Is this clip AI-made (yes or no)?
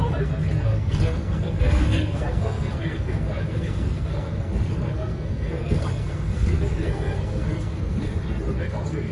yes